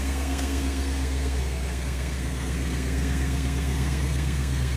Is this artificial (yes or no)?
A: yes